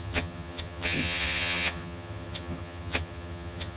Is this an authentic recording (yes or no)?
no